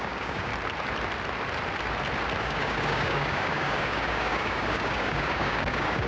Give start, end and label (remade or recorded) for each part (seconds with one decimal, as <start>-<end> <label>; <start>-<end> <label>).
0.0-0.5 remade; 0.5-2.4 recorded; 2.4-6.1 remade